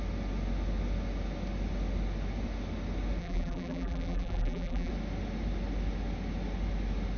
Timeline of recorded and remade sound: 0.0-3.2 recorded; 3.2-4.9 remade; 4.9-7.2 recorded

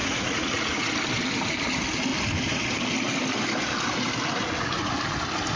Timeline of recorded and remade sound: 0.0-0.9 remade; 0.9-5.6 recorded

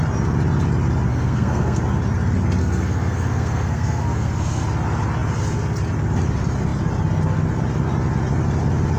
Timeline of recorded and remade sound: 0.0-1.1 recorded; 1.1-1.8 remade; 1.8-2.6 recorded; 2.6-4.6 remade; 4.6-9.0 recorded

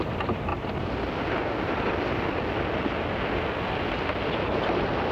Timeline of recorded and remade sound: 0.0-5.1 recorded